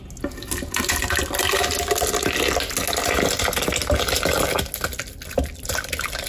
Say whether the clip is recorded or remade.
recorded